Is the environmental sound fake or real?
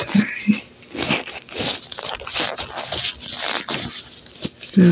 real